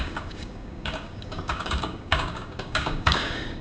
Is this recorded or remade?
remade